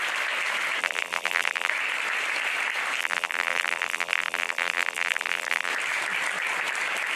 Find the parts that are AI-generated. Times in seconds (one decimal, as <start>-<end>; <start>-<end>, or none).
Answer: 0.8-1.7; 3.0-5.7